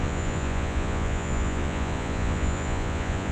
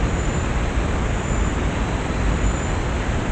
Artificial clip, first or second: first